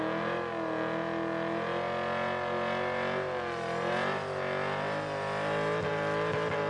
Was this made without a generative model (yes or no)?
yes